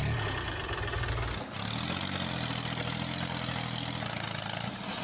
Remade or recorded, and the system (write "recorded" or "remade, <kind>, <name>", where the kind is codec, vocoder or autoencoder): recorded